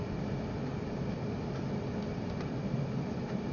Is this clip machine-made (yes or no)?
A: no